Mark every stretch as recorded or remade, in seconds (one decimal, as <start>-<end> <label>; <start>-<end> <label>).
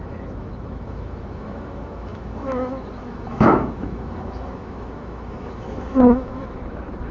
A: 0.0-7.1 remade